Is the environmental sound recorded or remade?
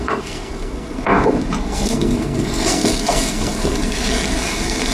remade